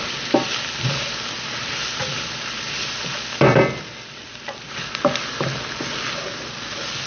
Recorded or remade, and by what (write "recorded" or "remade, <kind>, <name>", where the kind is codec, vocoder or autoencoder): remade, vocoder, BigVGAN v2